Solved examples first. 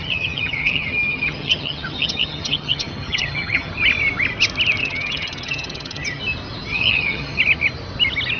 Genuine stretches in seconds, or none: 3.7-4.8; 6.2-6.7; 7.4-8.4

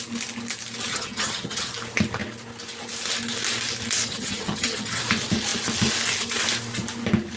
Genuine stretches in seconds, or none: 0.0-0.9; 1.7-4.1; 5.0-7.4

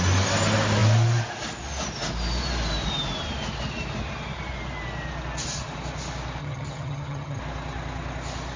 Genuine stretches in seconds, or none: 0.0-6.4; 7.4-8.6

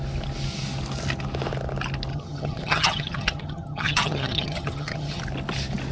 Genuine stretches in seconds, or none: 0.0-2.1; 5.2-5.9